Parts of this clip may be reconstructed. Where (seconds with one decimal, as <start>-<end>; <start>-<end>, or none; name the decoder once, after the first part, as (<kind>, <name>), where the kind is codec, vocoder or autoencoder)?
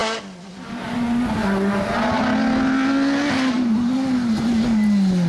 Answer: none